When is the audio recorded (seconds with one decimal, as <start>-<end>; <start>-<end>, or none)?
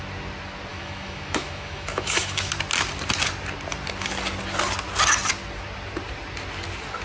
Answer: 0.0-0.7; 2.5-7.0